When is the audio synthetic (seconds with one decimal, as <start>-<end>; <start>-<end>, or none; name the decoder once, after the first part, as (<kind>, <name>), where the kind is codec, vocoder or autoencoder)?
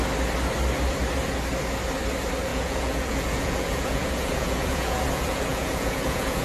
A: 2.5-6.4 (vocoder, Vocos)